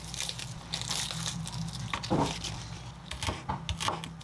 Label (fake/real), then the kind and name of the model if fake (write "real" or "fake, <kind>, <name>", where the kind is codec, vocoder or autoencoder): real